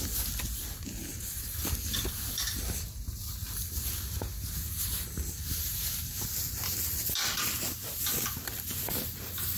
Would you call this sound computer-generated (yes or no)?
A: no